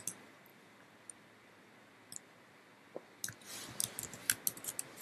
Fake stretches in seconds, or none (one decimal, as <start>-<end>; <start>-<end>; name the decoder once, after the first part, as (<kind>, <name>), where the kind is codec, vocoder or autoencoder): none